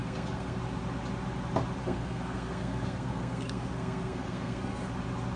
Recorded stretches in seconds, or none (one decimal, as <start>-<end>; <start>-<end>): 0.6-1.8; 4.9-5.4